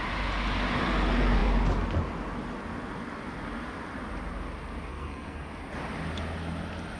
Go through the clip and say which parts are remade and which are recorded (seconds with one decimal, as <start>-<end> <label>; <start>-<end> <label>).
0.0-4.9 recorded; 4.9-5.5 remade; 5.5-7.0 recorded

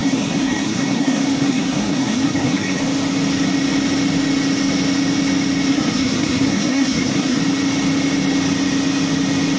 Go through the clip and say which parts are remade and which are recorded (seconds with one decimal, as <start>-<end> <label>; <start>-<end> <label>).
0.0-2.8 remade; 2.8-5.7 recorded; 5.7-7.4 remade; 7.4-9.6 recorded